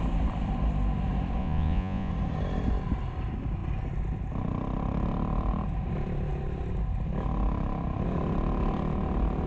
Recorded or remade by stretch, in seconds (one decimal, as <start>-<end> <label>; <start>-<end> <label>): 0.0-1.4 recorded; 1.4-2.1 remade; 2.1-9.5 recorded